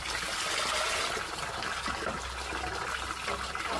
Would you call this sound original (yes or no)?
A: yes